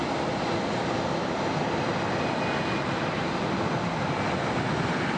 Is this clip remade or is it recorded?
recorded